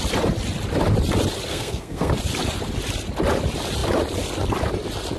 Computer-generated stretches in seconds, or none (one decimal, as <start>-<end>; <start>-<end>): 1.5-2.1